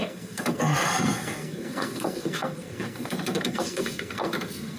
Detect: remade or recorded remade